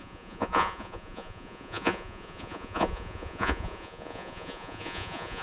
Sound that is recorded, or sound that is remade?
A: remade